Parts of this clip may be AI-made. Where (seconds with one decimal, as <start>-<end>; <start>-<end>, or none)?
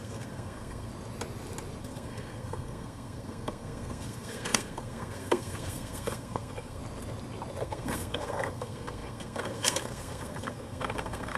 0.0-0.9; 1.8-6.8; 7.6-11.4